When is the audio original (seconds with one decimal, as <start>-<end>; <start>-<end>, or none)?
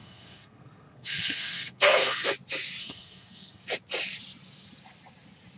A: 2.3-2.8; 3.6-5.6